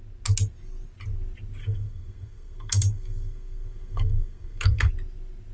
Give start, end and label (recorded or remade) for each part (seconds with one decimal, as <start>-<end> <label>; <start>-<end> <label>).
0.0-1.6 recorded; 1.6-4.9 remade; 4.9-5.5 recorded